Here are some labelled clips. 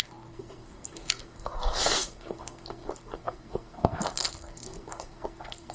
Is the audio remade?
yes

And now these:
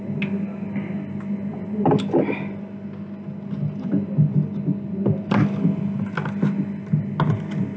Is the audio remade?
no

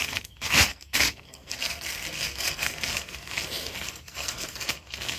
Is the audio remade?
yes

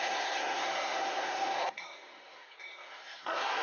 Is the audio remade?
yes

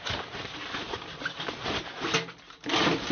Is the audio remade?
no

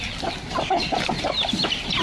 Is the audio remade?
no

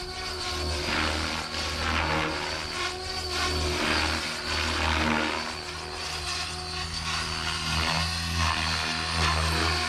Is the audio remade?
no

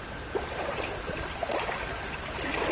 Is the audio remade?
no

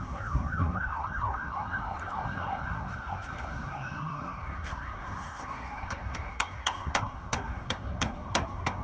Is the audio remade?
yes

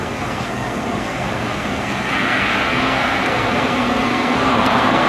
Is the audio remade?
yes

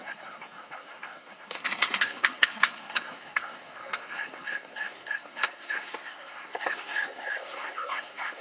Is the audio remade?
yes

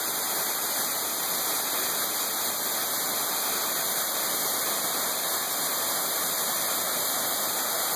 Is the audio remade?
no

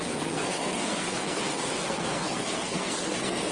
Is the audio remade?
yes